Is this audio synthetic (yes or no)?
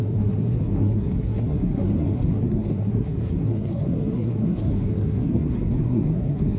yes